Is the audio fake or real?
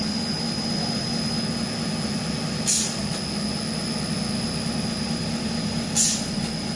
real